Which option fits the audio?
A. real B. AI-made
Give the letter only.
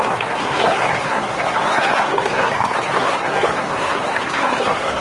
B